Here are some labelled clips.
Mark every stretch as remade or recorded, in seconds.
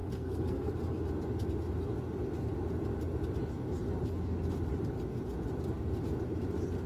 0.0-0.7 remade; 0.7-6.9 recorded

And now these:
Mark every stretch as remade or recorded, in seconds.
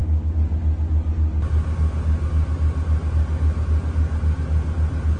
0.0-5.2 recorded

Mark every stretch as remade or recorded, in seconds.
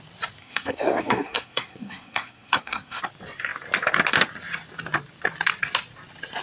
0.0-0.4 recorded; 0.4-3.0 remade; 3.0-6.4 recorded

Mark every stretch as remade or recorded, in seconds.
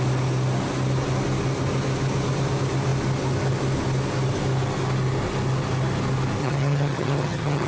0.0-6.4 recorded; 6.4-7.7 remade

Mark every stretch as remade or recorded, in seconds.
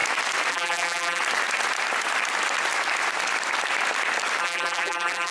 0.0-0.5 recorded; 0.5-1.2 remade; 1.2-4.4 recorded; 4.4-5.3 remade